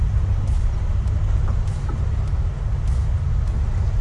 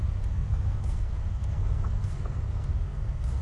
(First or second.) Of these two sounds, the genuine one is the first